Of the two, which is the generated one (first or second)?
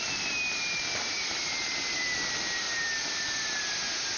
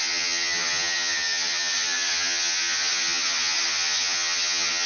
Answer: second